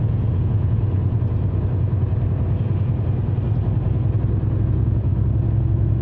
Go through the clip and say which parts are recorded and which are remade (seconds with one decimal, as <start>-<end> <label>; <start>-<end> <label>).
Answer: 0.0-1.0 remade; 1.0-4.6 recorded; 4.6-5.1 remade; 5.1-5.6 recorded; 5.6-6.0 remade